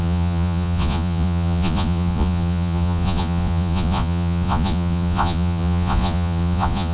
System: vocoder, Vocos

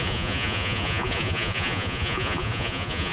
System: vocoder, Vocos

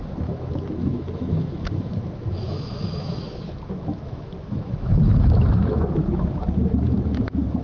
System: autoencoder, DAC-VAE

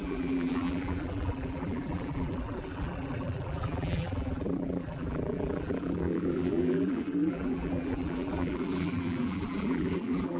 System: vocoder, BigVGAN v2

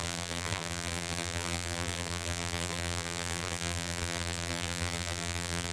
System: vocoder, BigVGAN v2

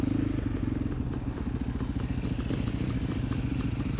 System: none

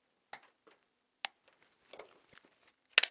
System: none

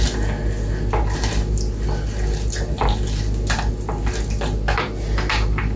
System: none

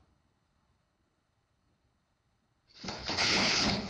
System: codec, HILCodec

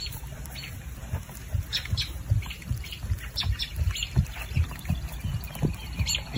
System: vocoder, BigVGAN v2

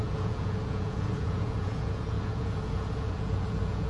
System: vocoder, Vocos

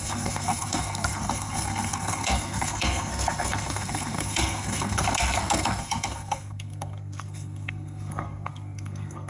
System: codec, SNAC